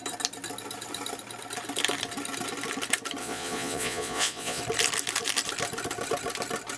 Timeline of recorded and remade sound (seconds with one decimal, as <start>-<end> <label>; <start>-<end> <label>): 0.0-3.2 recorded; 3.2-4.6 remade; 4.6-6.8 recorded